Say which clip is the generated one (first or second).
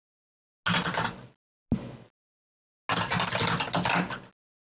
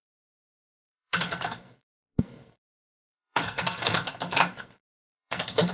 second